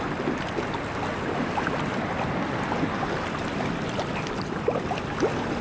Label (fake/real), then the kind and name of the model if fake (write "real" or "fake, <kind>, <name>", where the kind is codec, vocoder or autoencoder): real